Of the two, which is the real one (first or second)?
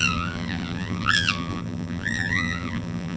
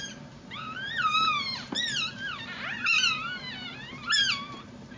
second